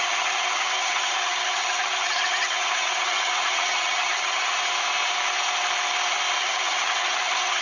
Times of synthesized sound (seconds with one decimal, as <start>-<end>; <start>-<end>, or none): 0.0-4.6; 6.4-7.6